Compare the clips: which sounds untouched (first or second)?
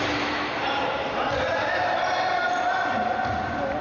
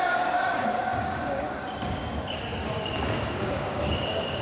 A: first